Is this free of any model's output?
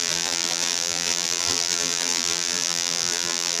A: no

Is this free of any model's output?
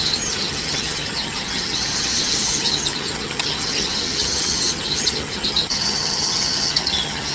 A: no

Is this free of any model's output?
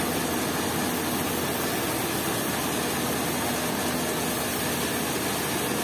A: yes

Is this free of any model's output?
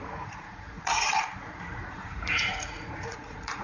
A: no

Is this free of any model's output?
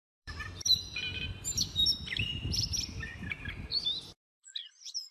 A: no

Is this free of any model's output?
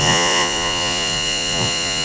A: no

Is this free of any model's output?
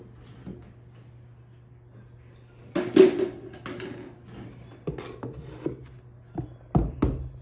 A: yes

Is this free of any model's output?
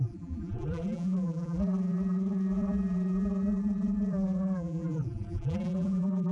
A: no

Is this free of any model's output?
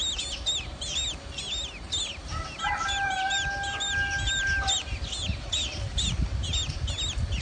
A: yes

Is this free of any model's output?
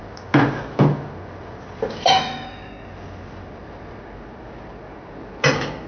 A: yes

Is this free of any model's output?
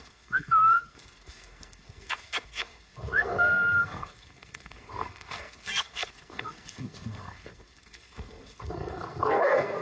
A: no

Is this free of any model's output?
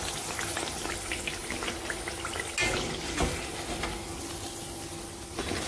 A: yes